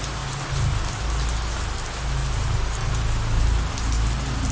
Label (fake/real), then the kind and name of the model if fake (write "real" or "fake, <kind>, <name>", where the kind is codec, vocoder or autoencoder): real